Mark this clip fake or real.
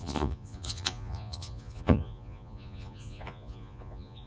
fake